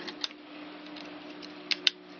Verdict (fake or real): real